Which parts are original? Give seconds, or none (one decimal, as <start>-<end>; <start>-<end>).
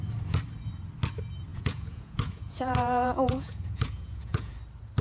0.0-1.5; 4.5-5.0